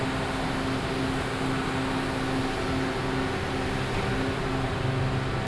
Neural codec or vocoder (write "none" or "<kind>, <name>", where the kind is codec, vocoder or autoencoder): none